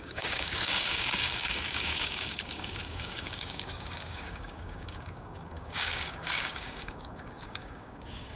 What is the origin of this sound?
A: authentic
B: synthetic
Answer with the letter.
B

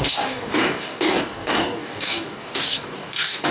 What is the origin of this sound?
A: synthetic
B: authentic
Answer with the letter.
A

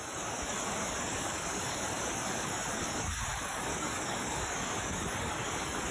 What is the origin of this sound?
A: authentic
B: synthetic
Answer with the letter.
B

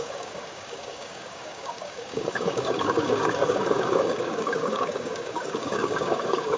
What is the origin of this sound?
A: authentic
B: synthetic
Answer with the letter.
B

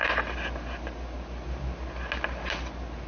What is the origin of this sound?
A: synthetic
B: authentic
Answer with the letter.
B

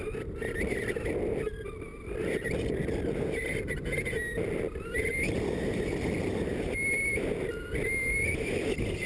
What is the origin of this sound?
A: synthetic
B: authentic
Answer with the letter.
B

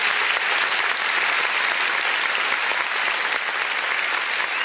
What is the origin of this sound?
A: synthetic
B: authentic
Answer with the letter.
B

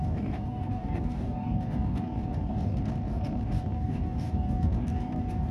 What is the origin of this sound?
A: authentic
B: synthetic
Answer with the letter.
B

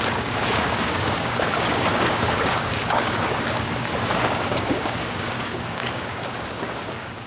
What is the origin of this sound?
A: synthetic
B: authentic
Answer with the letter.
A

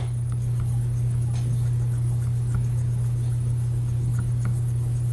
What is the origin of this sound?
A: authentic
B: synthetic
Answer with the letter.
B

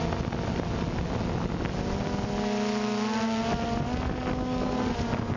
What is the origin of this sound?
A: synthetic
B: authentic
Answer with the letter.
B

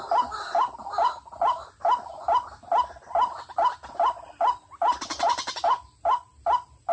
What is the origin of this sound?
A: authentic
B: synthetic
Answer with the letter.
A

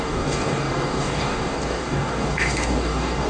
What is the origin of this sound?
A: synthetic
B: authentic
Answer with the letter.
A